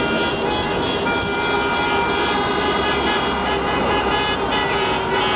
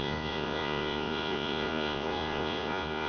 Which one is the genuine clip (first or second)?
first